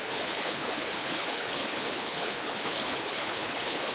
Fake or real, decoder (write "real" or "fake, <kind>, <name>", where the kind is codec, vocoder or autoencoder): fake, codec, HILCodec